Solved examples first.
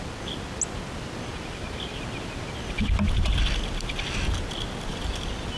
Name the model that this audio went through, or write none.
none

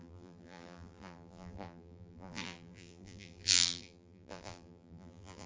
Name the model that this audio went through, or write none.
vocoder, BigVGAN v2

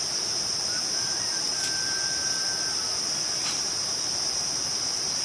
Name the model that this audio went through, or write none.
vocoder, BigVGAN v2